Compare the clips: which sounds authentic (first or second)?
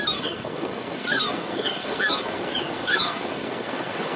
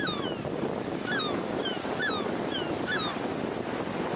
second